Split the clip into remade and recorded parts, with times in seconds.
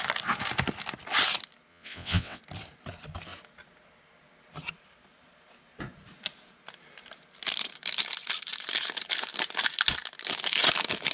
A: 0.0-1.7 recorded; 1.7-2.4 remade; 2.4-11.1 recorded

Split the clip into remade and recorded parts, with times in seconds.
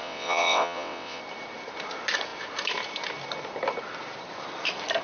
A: 0.0-1.2 remade; 1.2-5.0 recorded